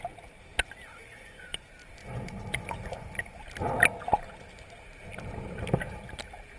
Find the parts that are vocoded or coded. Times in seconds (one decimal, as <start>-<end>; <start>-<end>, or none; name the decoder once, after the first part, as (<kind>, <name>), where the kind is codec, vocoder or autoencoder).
1.0-1.6 (vocoder, Vocos); 2.0-3.4